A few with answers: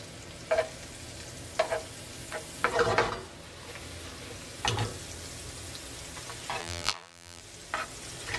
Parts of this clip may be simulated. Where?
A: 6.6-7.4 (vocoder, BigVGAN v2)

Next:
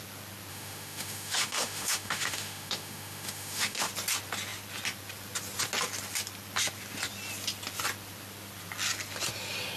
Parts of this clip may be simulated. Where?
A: 0.5-3.9 (autoencoder, DAC-VAE)

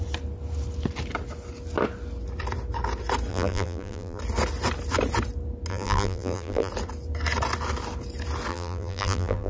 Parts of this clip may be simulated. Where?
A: 3.3-4.2 (vocoder, BigVGAN v2); 5.7-6.7; 8.5-9.5

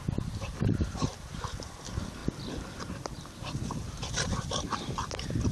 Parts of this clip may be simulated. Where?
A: 2.2-5.5 (vocoder, BigVGAN v2)

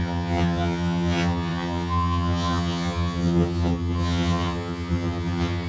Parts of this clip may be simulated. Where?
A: 0.0-5.7 (vocoder, HiFi-GAN)

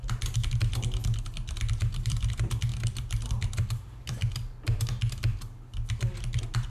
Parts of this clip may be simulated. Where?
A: none